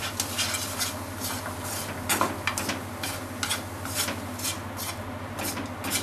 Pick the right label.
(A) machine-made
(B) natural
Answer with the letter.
B